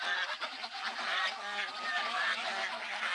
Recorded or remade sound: recorded